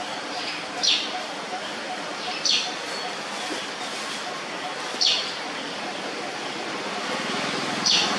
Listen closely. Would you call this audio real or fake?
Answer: real